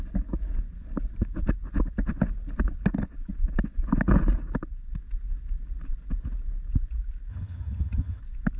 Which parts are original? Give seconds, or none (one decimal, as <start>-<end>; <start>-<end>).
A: 0.0-7.3; 8.2-8.6